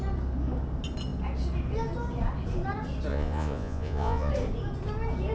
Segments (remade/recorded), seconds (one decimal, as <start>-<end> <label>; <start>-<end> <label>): 0.0-3.1 recorded; 3.1-4.3 remade; 4.3-5.3 recorded